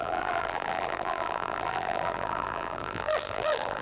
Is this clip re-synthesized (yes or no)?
yes